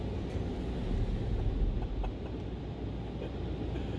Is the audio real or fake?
real